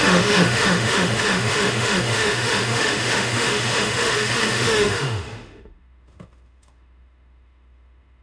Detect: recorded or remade remade